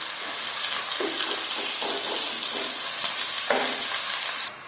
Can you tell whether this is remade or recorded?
recorded